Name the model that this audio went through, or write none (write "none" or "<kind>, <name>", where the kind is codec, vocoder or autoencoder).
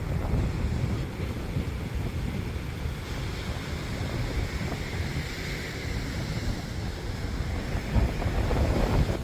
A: none